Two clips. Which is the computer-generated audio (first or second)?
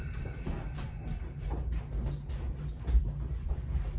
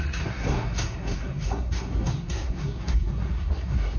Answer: second